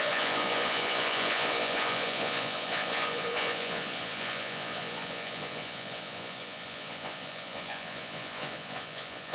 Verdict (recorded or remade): remade